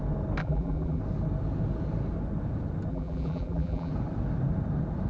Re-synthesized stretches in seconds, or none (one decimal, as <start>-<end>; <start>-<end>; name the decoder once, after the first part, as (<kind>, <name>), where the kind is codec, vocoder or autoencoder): 0.4-1.0 (vocoder, BigVGAN v2); 2.9-3.9